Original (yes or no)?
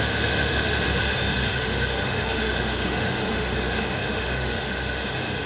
no